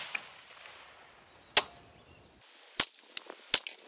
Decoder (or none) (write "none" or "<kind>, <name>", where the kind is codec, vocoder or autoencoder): none